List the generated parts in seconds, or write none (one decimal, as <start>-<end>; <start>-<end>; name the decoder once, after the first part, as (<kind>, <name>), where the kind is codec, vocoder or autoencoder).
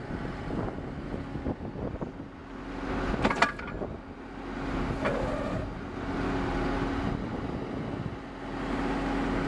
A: none